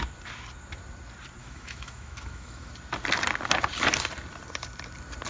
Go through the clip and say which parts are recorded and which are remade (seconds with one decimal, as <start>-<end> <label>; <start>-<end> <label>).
0.0-1.4 recorded; 1.4-2.7 remade; 2.7-5.3 recorded